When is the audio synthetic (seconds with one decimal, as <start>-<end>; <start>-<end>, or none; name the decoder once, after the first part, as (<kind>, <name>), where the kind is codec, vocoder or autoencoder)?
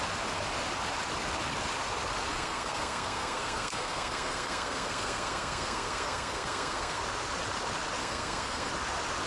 2.3-7.0 (codec, SNAC); 8.0-8.7